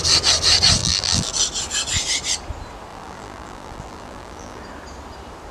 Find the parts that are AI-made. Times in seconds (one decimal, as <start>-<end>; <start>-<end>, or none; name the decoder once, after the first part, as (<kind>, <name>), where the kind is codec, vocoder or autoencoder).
0.8-1.3 (vocoder, BigVGAN v2); 2.9-4.6